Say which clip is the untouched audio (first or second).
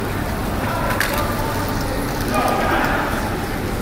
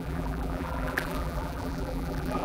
first